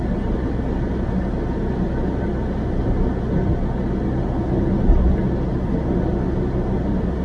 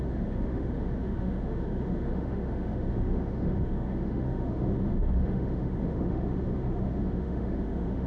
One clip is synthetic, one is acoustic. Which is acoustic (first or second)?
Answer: first